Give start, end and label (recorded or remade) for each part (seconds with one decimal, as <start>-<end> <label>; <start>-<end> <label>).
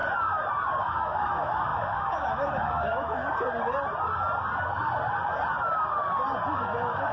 0.0-0.8 recorded; 0.8-3.2 remade; 3.2-6.5 recorded; 6.5-7.1 remade